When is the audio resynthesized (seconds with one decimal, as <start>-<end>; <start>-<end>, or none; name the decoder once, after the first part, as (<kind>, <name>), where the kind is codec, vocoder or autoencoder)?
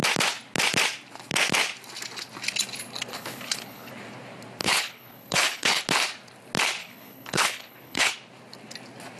3.1-3.9 (codec, HILCodec); 4.6-5.8; 6.8-8.1